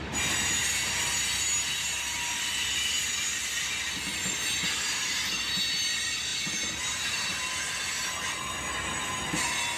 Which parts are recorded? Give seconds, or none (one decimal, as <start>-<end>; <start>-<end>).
0.0-9.8